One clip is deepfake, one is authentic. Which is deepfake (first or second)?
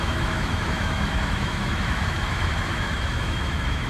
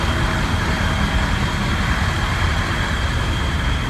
first